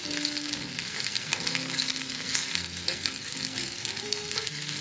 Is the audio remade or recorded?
remade